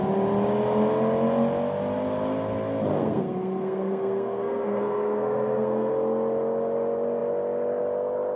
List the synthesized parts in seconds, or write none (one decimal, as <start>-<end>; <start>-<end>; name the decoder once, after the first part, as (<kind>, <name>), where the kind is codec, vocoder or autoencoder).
2.9-5.9 (codec, SNAC)